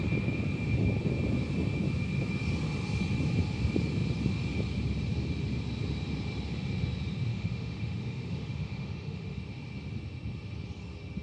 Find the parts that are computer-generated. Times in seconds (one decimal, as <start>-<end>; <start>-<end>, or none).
7.3-9.4